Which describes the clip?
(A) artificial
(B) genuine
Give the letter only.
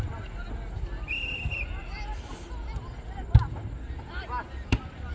B